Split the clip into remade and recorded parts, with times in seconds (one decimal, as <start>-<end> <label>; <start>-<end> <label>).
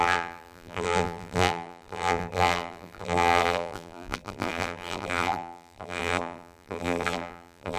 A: 0.0-7.8 remade